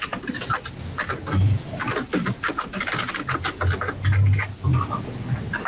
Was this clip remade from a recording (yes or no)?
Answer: no